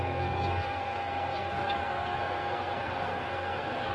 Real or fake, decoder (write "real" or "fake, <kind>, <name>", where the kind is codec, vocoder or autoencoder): fake, codec, SNAC